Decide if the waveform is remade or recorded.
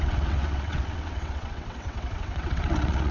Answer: remade